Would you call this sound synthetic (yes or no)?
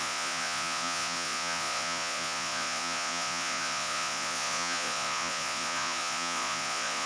yes